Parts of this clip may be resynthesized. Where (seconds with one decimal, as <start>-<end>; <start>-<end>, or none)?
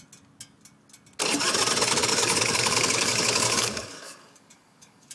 2.0-5.1